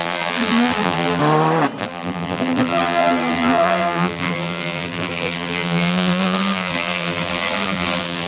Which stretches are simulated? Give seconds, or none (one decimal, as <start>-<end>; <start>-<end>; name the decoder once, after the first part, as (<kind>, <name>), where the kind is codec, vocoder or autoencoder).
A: 0.0-1.2 (vocoder, BigVGAN v2); 1.8-8.3